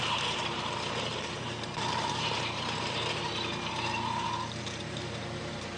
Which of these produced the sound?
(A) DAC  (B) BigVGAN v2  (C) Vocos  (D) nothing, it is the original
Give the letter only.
B